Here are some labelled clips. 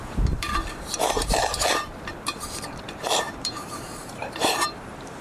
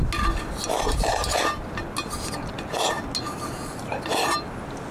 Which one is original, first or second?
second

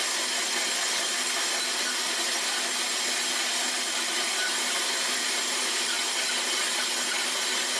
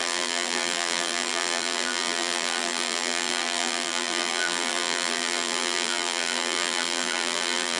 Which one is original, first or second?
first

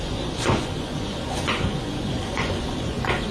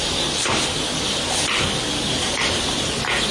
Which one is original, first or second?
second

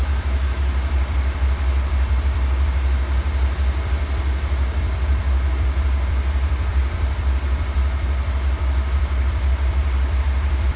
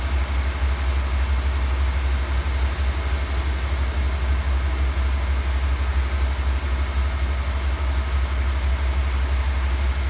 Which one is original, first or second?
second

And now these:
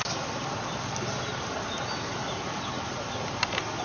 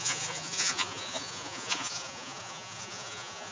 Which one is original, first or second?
first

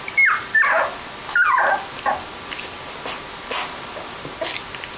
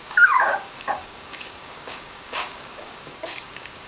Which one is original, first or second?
first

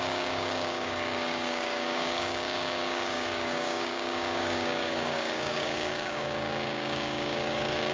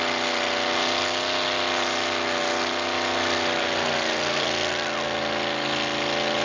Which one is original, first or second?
second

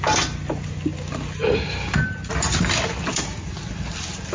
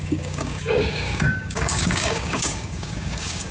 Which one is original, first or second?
first